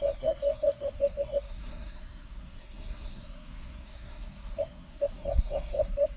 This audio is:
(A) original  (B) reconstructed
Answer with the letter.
B